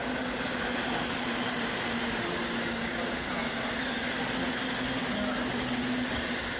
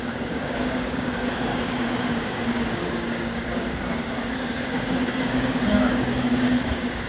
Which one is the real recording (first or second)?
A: first